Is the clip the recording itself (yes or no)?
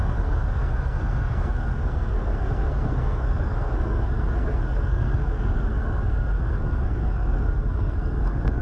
no